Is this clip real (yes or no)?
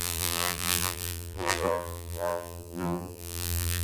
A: no